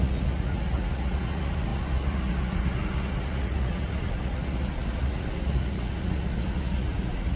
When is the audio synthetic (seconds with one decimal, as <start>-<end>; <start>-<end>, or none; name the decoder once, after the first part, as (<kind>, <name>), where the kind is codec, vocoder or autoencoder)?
0.0-7.4 (vocoder, Vocos)